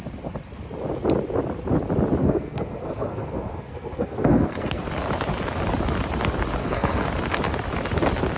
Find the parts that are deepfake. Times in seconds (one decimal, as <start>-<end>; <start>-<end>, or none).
2.2-4.9; 6.6-7.1